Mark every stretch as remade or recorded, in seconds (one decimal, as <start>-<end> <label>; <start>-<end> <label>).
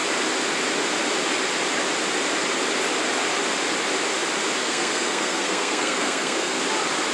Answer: 0.0-4.6 recorded; 4.6-6.6 remade; 6.6-7.1 recorded